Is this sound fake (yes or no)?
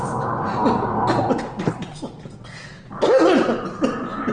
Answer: no